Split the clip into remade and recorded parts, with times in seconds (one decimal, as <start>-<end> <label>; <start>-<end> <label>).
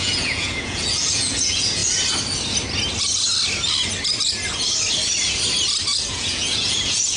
0.0-1.8 remade; 1.8-6.1 recorded; 6.1-7.2 remade